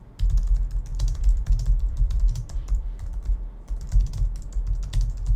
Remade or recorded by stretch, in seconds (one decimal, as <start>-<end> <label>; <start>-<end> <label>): 0.0-0.9 recorded; 0.9-4.1 remade; 4.1-5.4 recorded